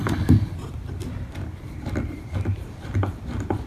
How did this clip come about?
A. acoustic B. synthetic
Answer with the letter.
B